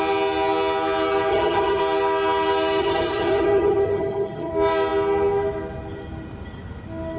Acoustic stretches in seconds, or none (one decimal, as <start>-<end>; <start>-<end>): 0.0-1.3; 1.8-2.8; 4.5-7.2